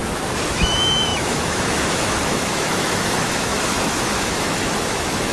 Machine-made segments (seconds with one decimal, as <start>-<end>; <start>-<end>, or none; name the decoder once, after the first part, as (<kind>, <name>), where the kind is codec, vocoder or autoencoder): 0.5-5.3 (autoencoder, DAC-VAE)